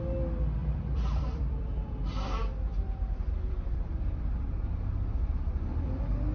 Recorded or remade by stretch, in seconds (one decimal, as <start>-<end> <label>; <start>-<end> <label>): 0.0-0.6 recorded; 0.6-4.4 remade; 4.4-6.3 recorded